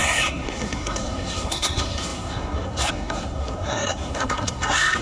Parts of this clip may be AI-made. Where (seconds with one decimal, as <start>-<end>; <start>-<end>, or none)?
0.0-5.0